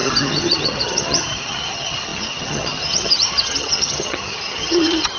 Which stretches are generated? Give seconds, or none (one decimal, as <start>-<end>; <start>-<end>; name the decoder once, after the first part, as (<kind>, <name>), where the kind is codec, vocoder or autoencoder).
0.0-5.2 (vocoder, HiFi-GAN)